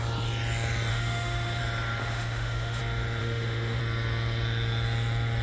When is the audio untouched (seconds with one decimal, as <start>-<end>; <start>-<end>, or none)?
0.0-0.9; 1.6-2.0; 2.8-3.2; 3.8-5.4